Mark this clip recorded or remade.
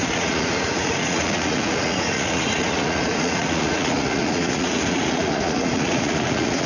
remade